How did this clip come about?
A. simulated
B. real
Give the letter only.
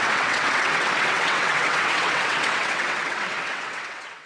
A